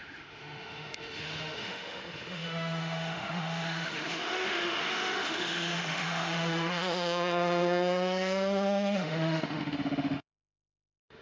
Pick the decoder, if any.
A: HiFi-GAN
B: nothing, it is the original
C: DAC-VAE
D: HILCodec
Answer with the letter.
C